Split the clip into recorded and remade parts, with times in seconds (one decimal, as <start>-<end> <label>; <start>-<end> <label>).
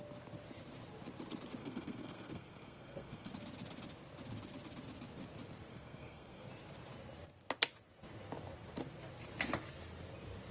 0.0-1.6 recorded; 1.6-3.3 remade; 3.3-5.7 recorded; 5.7-6.5 remade; 6.5-10.5 recorded